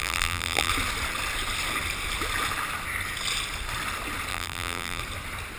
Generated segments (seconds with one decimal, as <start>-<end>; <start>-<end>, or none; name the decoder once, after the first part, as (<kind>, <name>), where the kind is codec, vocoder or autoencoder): 0.0-0.7 (vocoder, BigVGAN v2); 4.3-5.0